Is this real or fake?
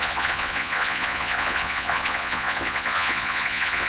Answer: fake